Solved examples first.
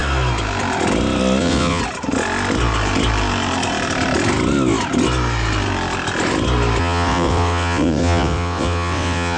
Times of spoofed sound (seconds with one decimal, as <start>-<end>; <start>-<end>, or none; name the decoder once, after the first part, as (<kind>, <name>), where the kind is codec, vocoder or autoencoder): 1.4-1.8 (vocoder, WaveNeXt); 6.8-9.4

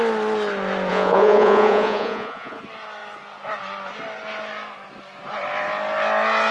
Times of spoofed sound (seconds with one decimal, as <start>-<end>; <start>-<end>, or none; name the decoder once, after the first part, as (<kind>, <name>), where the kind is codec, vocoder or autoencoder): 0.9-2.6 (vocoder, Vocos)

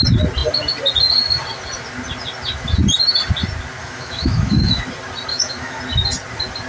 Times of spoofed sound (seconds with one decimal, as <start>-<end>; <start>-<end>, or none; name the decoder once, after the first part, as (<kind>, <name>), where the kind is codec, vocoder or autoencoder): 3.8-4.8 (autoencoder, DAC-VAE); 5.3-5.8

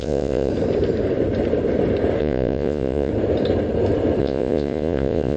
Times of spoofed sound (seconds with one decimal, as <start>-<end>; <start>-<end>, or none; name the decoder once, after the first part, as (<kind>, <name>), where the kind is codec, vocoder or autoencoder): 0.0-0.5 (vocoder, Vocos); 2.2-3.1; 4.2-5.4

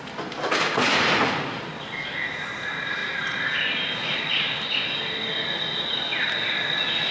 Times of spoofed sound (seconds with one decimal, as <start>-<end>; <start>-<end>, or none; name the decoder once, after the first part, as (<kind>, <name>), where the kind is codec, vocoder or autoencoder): none